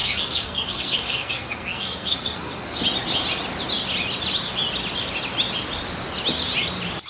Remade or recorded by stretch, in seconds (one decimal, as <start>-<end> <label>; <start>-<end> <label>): 0.0-2.8 remade; 2.8-7.1 recorded